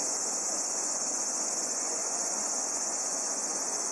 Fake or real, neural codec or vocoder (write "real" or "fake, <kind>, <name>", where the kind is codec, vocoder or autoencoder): fake, vocoder, Vocos